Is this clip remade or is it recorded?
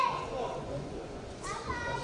remade